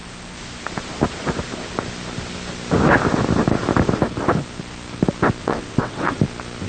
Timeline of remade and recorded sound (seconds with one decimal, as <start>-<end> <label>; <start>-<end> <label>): 0.0-5.4 recorded; 5.4-6.2 remade; 6.2-6.7 recorded